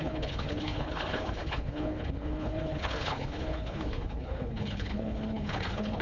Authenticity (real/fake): fake